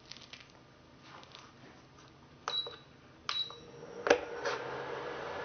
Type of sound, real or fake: real